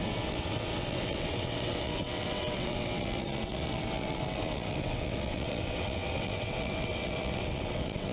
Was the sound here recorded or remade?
remade